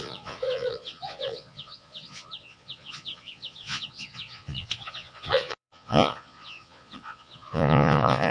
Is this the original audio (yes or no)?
no